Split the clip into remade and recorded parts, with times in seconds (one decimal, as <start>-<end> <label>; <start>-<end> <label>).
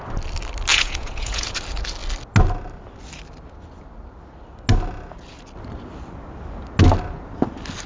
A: 0.0-0.7 recorded; 0.7-1.6 remade; 1.6-7.9 recorded